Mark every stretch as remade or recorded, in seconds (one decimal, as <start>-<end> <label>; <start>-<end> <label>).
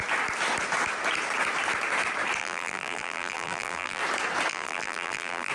0.0-2.4 recorded; 2.4-4.0 remade; 4.0-4.5 recorded; 4.5-5.5 remade